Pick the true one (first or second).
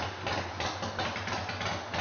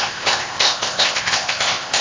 first